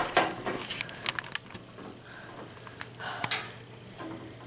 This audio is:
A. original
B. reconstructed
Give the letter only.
A